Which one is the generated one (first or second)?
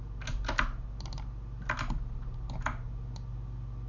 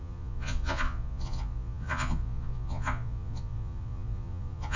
second